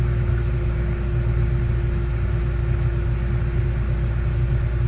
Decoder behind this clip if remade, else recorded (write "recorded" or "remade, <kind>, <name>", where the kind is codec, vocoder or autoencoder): recorded